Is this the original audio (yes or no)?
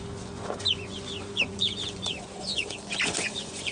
no